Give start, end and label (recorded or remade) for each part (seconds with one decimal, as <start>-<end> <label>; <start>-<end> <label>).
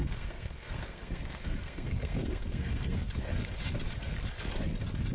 0.0-3.1 remade; 3.1-5.1 recorded